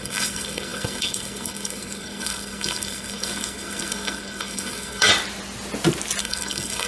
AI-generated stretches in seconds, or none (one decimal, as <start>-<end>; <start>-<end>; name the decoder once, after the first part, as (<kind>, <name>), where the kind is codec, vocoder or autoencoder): 0.0-5.1 (codec, SNAC); 6.2-6.9

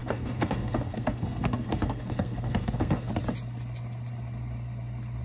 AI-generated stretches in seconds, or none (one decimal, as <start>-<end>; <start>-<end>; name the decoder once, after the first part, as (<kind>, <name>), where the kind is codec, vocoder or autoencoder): 0.0-3.1 (codec, SNAC)